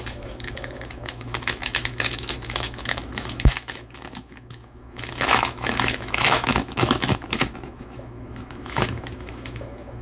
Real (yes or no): no